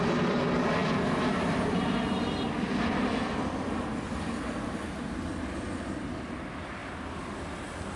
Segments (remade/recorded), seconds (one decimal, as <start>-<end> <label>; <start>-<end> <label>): 0.0-8.0 recorded